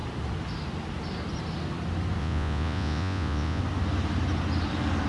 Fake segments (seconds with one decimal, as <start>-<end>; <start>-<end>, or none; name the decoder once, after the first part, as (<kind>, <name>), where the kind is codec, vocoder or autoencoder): 2.2-3.6 (vocoder, Vocos)